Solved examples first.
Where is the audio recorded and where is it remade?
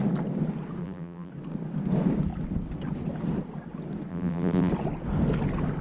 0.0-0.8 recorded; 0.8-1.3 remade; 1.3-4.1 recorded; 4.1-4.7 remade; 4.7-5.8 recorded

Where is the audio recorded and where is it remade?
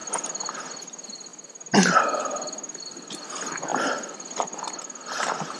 0.0-3.7 recorded; 3.7-4.7 remade; 4.7-5.6 recorded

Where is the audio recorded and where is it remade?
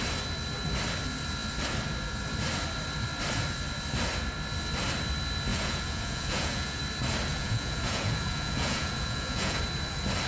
0.0-5.5 recorded; 5.5-6.8 remade; 6.8-7.3 recorded; 7.3-9.6 remade; 9.6-10.3 recorded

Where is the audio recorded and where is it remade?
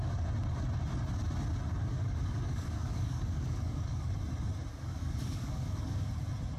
0.0-1.8 recorded; 1.8-4.1 remade; 4.1-4.7 recorded; 4.7-6.1 remade; 6.1-6.6 recorded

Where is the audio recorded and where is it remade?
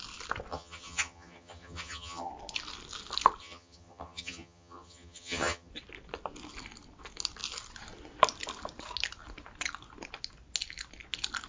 0.0-0.5 recorded; 0.5-2.3 remade; 2.3-3.4 recorded; 3.4-5.7 remade; 5.7-11.5 recorded